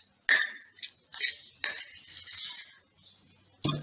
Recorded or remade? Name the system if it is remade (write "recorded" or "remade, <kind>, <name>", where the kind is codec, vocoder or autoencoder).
recorded